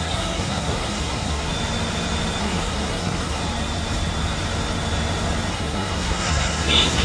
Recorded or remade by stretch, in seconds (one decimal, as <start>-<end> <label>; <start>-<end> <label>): 0.0-1.5 remade; 1.5-2.4 recorded; 2.4-3.4 remade; 3.4-5.5 recorded; 5.5-7.0 remade